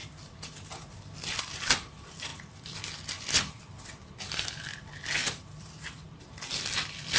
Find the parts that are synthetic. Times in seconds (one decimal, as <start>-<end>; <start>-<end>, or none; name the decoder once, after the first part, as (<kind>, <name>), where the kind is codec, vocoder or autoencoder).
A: none